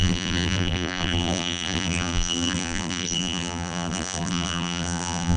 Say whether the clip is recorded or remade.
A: remade